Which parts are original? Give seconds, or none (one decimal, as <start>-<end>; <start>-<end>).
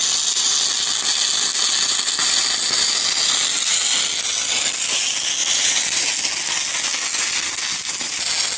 0.0-5.4; 6.1-8.6